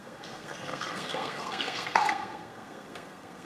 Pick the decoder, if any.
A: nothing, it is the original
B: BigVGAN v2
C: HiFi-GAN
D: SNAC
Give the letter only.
D